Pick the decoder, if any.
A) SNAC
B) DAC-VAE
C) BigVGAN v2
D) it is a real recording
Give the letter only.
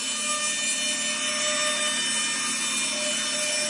D